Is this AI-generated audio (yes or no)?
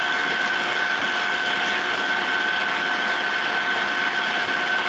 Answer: no